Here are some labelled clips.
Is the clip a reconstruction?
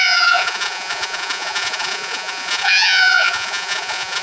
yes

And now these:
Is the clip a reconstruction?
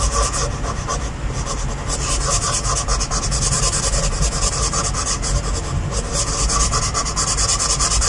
no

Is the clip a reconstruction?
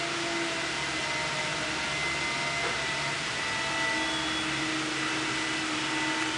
no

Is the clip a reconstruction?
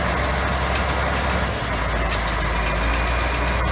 no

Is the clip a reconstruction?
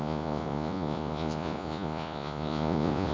yes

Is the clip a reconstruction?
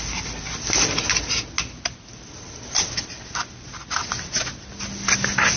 no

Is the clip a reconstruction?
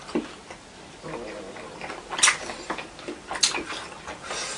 no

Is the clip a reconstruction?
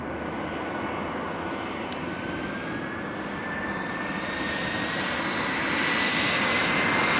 no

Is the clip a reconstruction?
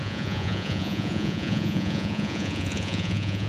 yes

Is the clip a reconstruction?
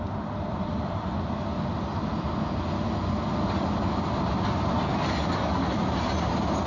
no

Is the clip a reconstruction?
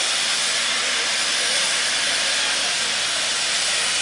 no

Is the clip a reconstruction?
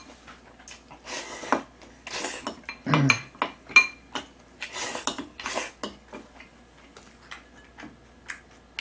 no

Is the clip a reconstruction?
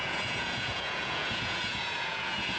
yes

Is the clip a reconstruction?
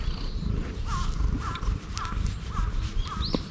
no